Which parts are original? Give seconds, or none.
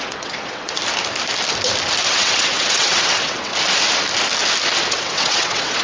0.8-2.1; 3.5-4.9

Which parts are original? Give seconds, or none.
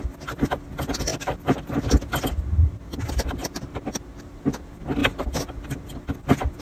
0.0-1.1; 1.8-3.4; 3.9-6.6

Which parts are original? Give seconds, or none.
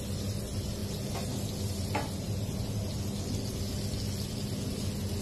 0.0-5.2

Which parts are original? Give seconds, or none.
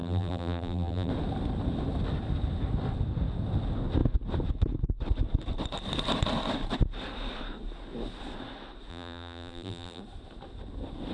1.1-8.9; 10.0-11.1